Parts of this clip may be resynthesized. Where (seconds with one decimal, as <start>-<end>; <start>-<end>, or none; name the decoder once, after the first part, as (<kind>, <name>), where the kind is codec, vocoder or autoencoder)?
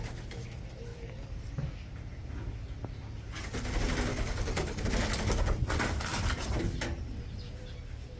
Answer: 0.9-1.9 (codec, DAC); 4.1-4.8